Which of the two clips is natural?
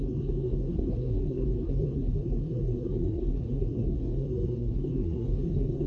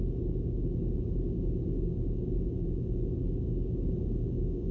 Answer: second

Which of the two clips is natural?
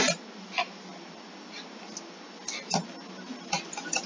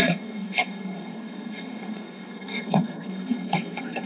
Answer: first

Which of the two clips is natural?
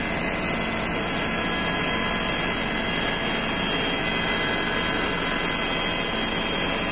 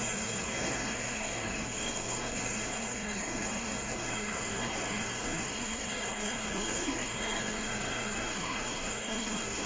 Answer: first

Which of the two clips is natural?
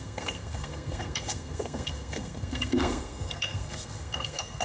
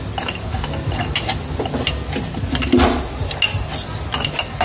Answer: second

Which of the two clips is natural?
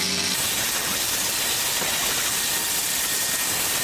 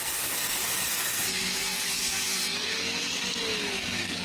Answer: first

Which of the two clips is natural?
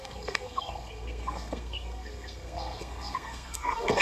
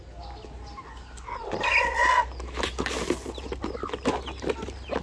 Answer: second